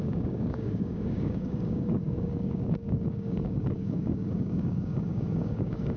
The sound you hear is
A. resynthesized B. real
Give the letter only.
A